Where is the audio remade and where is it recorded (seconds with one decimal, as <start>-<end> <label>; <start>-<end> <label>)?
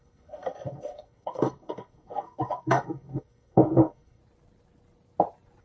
0.0-4.2 remade; 4.2-5.6 recorded